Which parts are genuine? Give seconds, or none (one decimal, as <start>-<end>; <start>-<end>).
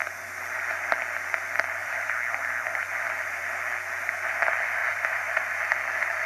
0.0-1.8; 3.5-4.8; 5.8-6.3